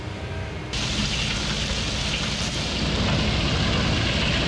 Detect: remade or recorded recorded